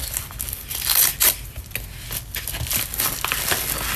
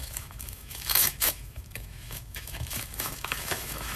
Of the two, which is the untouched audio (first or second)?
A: first